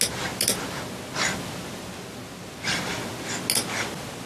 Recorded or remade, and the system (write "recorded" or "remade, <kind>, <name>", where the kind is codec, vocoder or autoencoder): recorded